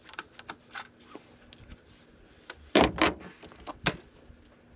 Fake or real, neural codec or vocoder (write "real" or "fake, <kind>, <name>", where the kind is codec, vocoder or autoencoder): real